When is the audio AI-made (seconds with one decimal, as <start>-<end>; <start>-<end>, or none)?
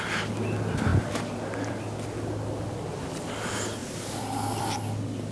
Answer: none